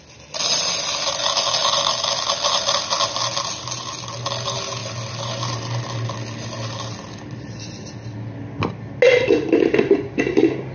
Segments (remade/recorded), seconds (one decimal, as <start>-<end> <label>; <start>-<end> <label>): 0.0-10.7 recorded